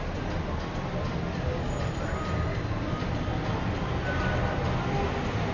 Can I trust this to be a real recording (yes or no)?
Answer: yes